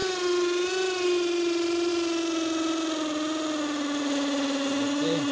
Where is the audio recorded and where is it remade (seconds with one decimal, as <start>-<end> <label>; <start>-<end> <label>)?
0.0-5.3 recorded